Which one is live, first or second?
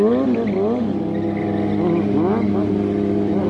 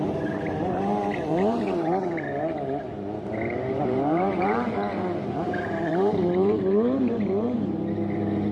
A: first